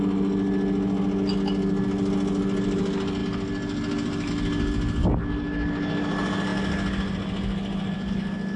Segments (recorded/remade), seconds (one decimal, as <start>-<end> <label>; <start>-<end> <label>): 0.0-8.6 recorded